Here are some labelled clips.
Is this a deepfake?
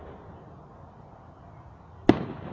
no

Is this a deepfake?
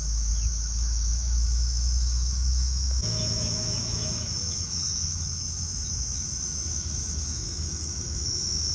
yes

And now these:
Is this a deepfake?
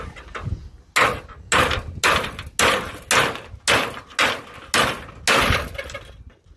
no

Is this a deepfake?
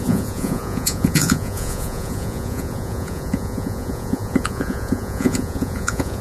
yes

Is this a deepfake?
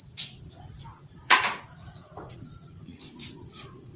yes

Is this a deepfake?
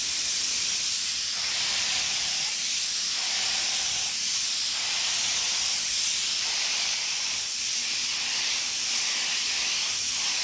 yes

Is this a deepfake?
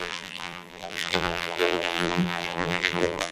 yes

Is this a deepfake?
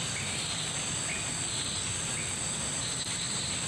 no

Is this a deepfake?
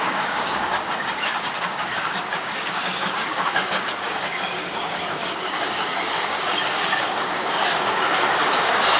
yes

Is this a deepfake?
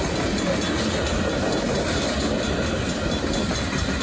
no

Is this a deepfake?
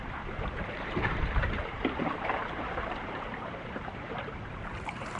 yes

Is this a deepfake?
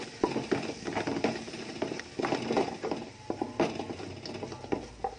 no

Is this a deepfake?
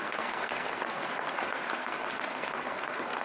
yes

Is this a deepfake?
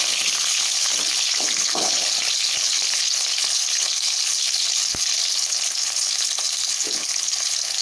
yes